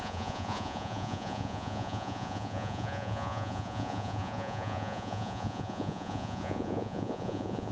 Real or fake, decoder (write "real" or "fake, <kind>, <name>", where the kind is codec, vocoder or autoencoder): fake, vocoder, Vocos